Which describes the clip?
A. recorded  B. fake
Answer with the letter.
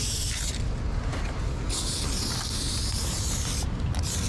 A